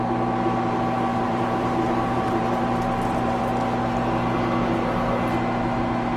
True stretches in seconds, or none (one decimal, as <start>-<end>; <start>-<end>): 0.0-1.1; 3.4-6.2